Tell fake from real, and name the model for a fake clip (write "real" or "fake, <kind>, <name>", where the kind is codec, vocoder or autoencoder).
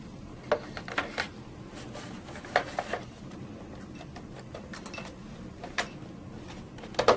real